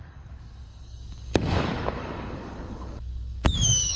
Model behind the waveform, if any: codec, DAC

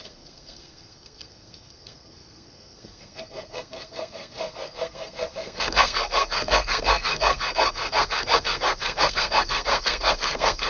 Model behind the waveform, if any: codec, SNAC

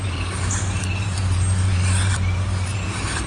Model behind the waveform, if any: vocoder, BigVGAN v2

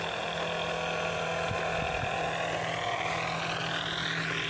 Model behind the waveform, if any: none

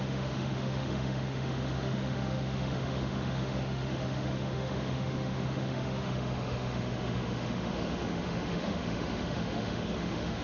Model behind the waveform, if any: autoencoder, DAC-VAE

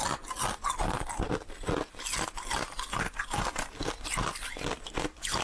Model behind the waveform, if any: none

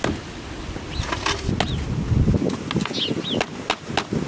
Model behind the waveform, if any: none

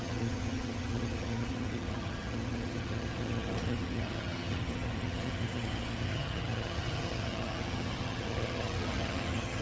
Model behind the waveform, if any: vocoder, HiFi-GAN